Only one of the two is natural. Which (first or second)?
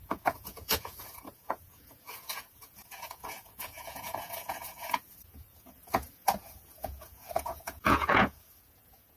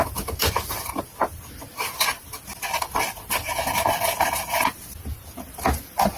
second